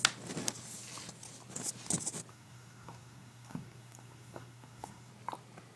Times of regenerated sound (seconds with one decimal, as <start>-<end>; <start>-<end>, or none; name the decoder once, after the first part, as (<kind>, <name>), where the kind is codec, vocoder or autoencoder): 2.3-5.1 (codec, SNAC)

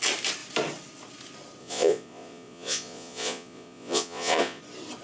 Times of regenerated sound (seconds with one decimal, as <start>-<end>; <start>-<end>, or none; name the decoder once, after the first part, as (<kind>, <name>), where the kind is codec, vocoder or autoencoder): 1.6-4.6 (vocoder, Vocos)

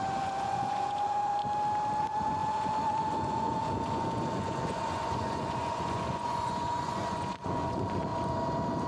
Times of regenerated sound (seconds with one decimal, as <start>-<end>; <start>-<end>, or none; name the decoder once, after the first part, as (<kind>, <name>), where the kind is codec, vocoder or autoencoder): 0.0-1.4 (vocoder, Vocos); 2.0-8.1

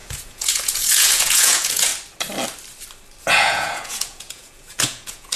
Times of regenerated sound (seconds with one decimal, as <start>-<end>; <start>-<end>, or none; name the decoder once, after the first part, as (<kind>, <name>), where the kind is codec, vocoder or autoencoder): 0.0-1.9 (vocoder, Vocos); 3.2-5.4

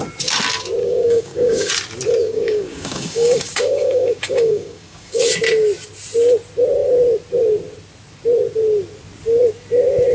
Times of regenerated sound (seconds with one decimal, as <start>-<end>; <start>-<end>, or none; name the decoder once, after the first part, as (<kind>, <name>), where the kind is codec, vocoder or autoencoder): 0.8-1.7 (codec, DAC); 2.2-5.2

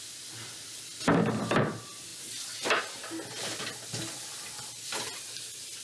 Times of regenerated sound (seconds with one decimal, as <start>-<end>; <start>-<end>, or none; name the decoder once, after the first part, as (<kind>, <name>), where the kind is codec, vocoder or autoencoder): none

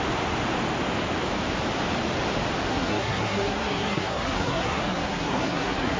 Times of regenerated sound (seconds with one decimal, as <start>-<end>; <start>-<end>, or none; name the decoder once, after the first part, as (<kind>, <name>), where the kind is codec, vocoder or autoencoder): 2.7-6.0 (codec, SNAC)

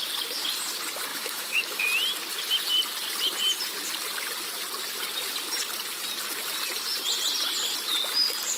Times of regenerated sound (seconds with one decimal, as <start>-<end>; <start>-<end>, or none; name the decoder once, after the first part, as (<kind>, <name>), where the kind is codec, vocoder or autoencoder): 1.1-1.8 (autoencoder, DAC-VAE)